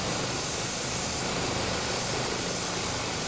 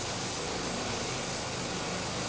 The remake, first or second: first